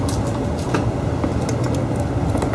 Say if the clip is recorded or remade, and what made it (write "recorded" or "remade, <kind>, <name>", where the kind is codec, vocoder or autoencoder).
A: recorded